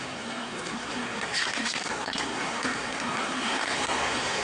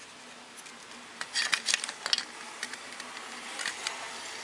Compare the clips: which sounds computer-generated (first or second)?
first